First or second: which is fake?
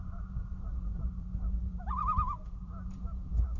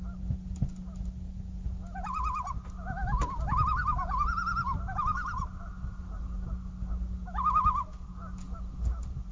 first